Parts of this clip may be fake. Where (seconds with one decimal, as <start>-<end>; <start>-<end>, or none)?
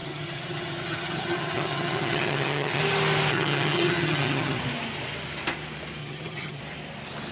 0.0-2.8; 3.3-4.6; 6.0-6.6